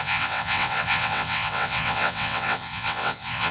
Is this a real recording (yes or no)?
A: no